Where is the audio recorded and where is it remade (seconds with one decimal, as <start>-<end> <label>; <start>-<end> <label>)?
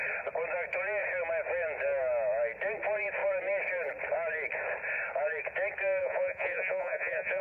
0.0-6.0 recorded; 6.0-7.4 remade